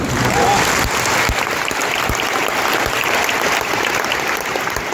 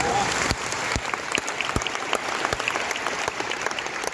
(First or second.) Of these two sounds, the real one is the first